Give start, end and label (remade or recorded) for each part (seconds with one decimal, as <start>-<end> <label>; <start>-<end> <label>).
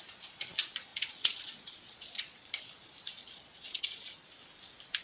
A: 0.0-0.9 recorded; 0.9-2.5 remade; 2.5-3.2 recorded; 3.2-3.9 remade; 3.9-5.0 recorded